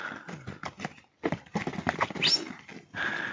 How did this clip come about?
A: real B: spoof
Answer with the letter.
A